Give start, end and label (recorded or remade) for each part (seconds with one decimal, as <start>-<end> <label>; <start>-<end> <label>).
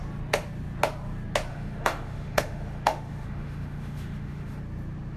0.0-1.5 recorded; 1.5-4.6 remade; 4.6-5.2 recorded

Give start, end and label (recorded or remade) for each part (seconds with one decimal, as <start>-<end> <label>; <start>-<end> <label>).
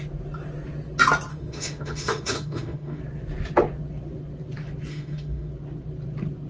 0.0-1.3 recorded; 1.3-3.0 remade; 3.0-4.9 recorded; 4.9-5.5 remade; 5.5-6.5 recorded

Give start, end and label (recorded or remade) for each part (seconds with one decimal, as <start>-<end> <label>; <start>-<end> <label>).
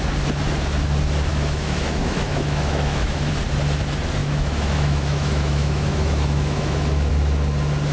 0.0-1.3 recorded; 1.3-3.3 remade; 3.3-4.2 recorded; 4.2-7.1 remade; 7.1-7.9 recorded